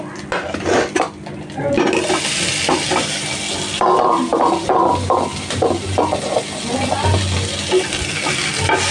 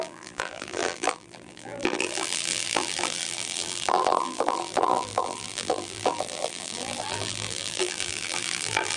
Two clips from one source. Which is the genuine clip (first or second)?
first